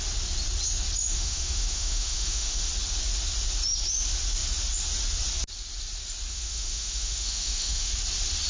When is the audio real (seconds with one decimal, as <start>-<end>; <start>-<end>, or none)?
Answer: 0.0-1.0; 2.7-6.3; 7.9-8.5